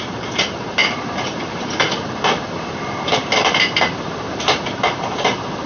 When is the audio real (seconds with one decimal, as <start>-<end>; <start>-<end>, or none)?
none

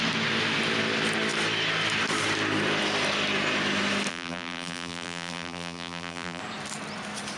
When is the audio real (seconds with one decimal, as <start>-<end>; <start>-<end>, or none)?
0.0-4.1; 6.4-7.4

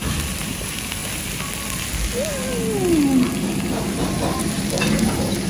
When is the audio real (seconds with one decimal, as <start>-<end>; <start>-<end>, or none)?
1.0-3.4

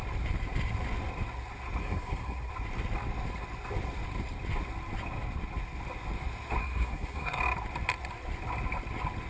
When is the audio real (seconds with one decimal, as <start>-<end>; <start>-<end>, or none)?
0.0-1.8; 2.5-6.6; 7.4-9.3

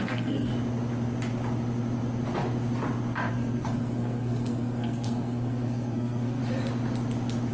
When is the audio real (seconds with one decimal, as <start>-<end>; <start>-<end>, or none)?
0.5-3.3; 6.4-7.5